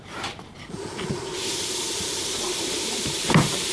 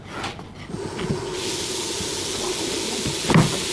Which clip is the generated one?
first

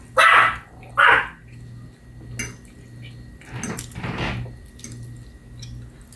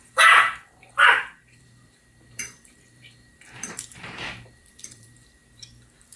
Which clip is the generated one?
second